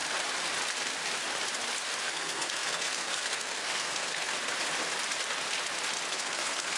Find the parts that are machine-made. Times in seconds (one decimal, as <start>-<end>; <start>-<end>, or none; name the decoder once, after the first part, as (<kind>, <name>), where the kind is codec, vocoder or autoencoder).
2.0-4.3 (codec, SNAC); 6.1-6.8